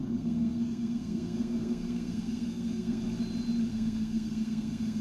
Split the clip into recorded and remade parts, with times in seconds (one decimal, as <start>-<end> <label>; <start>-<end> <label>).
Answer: 0.0-3.0 remade; 3.0-3.7 recorded; 3.7-5.0 remade